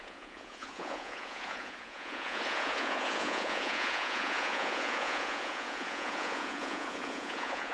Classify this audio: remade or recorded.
remade